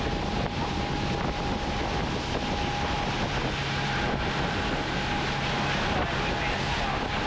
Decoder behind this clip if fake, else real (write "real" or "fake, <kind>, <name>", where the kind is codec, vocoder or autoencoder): real